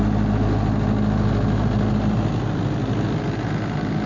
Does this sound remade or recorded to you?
recorded